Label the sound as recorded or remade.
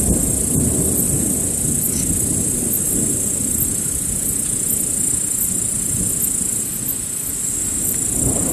recorded